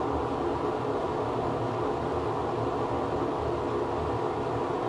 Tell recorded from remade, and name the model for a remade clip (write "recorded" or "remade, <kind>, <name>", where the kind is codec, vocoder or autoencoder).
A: recorded